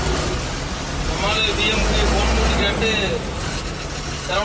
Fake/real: real